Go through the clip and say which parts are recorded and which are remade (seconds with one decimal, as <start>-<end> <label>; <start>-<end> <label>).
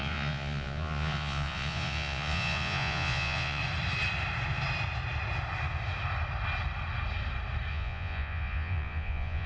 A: 0.0-3.6 remade; 3.6-7.7 recorded; 7.7-9.5 remade